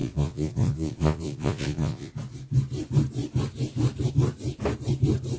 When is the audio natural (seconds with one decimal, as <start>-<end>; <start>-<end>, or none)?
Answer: 2.1-5.4